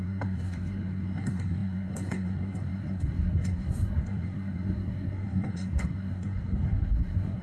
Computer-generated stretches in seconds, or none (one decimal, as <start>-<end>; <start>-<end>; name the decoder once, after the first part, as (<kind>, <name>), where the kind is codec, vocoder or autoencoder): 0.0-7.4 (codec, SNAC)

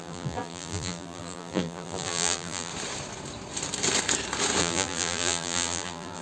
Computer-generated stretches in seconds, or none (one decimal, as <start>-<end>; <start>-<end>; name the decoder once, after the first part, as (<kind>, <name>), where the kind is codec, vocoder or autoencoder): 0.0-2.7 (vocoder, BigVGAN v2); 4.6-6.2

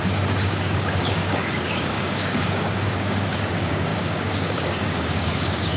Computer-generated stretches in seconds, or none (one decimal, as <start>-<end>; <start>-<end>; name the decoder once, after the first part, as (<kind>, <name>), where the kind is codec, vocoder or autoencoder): 0.0-5.8 (codec, DAC)

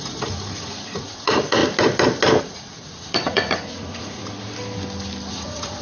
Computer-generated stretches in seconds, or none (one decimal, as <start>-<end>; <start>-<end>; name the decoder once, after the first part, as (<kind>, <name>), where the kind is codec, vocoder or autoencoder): 0.0-1.6 (vocoder, Vocos); 2.4-4.2; 5.3-5.8

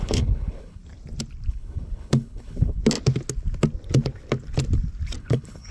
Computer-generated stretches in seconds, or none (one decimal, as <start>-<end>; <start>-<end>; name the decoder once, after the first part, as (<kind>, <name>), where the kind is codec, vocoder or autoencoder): 0.0-0.8 (codec, HILCodec); 1.5-2.8; 5.2-5.7

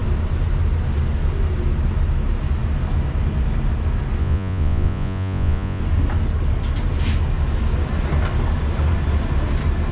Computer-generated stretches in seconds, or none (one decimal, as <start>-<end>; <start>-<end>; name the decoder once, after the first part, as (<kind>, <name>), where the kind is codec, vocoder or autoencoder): 4.2-5.8 (vocoder, Vocos)

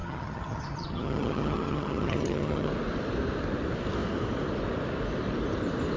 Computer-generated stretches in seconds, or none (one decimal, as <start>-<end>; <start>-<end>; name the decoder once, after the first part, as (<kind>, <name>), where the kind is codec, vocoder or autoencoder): 0.0-2.7 (vocoder, HiFi-GAN)

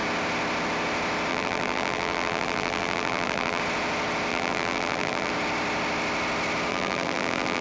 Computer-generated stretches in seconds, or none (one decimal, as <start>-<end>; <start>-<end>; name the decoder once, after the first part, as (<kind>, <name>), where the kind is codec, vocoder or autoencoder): 1.3-3.6 (vocoder, BigVGAN v2); 4.3-5.3; 6.7-7.6